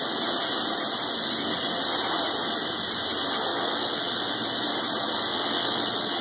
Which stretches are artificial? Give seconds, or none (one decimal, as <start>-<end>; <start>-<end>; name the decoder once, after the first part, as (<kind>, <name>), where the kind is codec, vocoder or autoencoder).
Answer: 3.5-4.3 (vocoder, WaveNeXt); 5.3-6.2